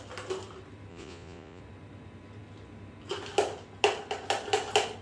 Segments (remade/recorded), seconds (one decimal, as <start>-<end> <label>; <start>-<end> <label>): 0.0-0.9 recorded; 0.9-1.6 remade; 1.6-5.0 recorded